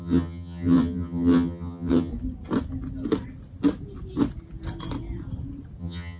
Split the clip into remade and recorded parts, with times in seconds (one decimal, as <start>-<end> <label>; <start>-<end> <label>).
0.0-2.1 remade; 2.1-5.8 recorded; 5.8-6.2 remade

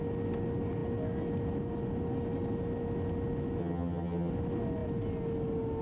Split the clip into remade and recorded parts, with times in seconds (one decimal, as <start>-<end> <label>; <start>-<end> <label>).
0.0-3.6 recorded; 3.6-4.3 remade; 4.3-5.8 recorded

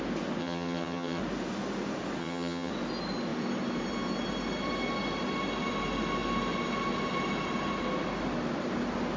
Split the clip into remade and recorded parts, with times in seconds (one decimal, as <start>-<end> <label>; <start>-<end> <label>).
0.0-0.4 recorded; 0.4-1.2 remade; 1.2-2.2 recorded; 2.2-2.7 remade; 2.7-9.2 recorded

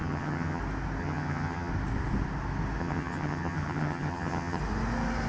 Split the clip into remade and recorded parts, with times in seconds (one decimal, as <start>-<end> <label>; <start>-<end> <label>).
0.0-0.6 remade; 0.6-1.0 recorded; 1.0-1.7 remade; 1.7-2.8 recorded; 2.8-4.6 remade; 4.6-5.3 recorded

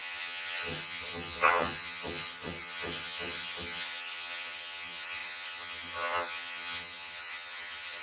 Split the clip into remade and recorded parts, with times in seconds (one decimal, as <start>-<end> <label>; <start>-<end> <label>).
0.0-8.0 remade